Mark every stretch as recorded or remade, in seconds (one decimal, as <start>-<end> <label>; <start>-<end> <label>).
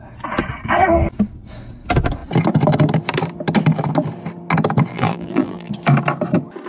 0.0-4.9 recorded; 4.9-5.7 remade; 5.7-6.7 recorded